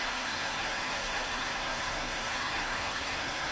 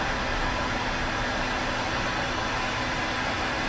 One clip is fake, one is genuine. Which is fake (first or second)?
first